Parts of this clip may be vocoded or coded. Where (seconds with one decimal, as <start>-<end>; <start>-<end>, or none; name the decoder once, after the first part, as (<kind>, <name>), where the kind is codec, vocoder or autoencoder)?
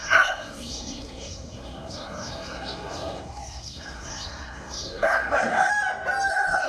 0.0-5.7 (codec, SNAC); 6.3-6.7